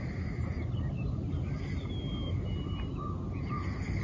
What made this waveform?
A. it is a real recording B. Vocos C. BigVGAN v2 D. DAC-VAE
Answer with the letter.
A